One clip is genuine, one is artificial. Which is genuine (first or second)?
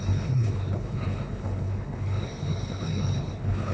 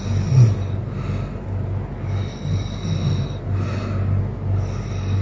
second